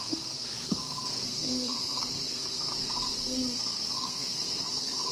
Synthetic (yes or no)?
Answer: yes